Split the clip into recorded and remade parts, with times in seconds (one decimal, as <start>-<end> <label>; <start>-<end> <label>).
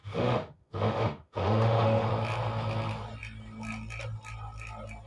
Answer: 0.0-2.1 remade; 2.1-5.1 recorded